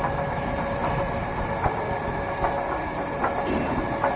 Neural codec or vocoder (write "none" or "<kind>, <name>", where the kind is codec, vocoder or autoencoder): none